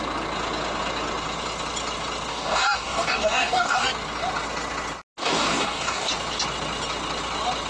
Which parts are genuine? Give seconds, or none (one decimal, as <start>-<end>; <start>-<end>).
0.0-2.3; 3.9-5.2; 6.1-7.7